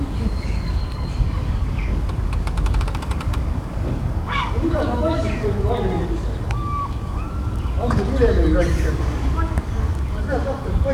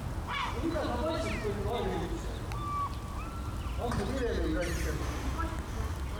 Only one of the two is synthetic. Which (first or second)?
first